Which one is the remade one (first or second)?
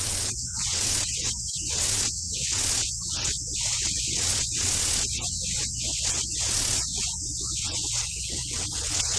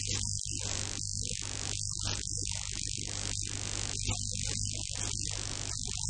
first